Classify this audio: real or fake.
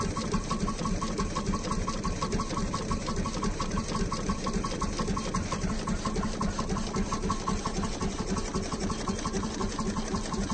real